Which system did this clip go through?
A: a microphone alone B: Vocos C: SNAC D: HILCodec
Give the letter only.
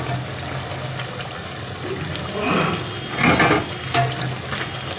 A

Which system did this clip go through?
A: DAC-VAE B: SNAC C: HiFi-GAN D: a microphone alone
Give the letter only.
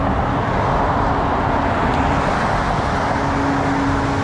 D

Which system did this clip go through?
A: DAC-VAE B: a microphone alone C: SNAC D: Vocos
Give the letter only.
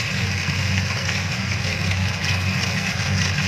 C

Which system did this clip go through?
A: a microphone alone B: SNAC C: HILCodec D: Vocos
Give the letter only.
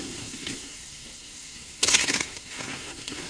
B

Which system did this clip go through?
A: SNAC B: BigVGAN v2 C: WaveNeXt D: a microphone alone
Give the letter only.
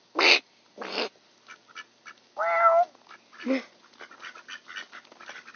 D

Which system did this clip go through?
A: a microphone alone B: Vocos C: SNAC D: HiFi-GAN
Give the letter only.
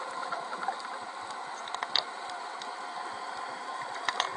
A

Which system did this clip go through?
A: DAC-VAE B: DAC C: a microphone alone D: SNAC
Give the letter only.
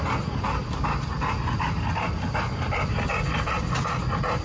C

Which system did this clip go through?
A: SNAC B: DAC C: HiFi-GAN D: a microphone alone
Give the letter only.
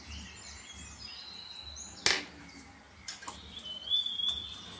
D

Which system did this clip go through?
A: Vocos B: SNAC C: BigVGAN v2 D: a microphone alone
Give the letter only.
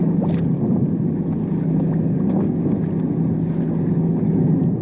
D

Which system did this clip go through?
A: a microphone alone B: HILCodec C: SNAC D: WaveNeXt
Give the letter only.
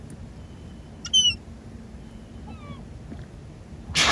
A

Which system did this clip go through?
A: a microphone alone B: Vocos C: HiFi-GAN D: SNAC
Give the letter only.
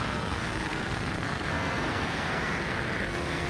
D